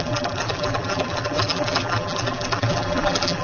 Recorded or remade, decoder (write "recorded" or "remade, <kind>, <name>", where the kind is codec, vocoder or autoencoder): remade, vocoder, BigVGAN v2